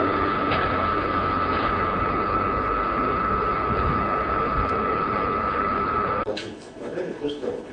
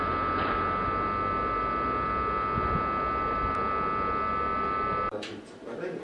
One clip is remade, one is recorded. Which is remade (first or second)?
first